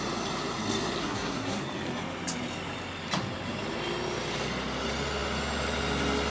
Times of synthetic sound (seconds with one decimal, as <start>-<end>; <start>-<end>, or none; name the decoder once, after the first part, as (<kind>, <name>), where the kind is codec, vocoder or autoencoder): 1.0-1.6 (codec, SNAC)